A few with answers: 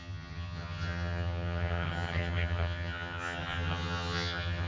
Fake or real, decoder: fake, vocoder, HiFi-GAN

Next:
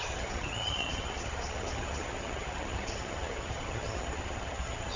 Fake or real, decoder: fake, vocoder, HiFi-GAN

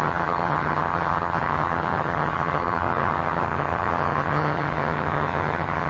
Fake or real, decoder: fake, vocoder, HiFi-GAN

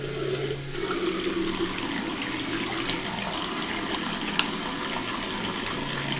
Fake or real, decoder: real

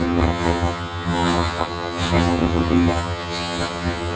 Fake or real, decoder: fake, vocoder, HiFi-GAN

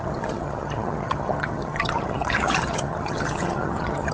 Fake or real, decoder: fake, vocoder, HiFi-GAN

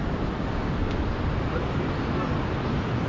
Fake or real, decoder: real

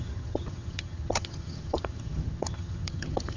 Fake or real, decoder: fake, vocoder, HiFi-GAN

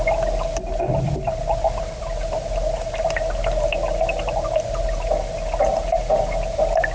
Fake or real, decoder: real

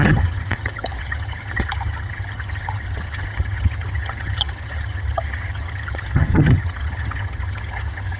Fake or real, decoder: fake, vocoder, HiFi-GAN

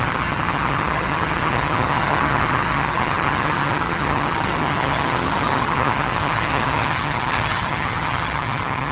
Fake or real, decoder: fake, vocoder, HiFi-GAN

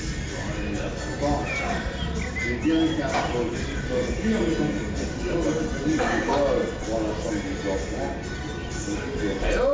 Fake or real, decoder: real